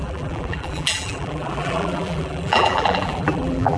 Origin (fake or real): fake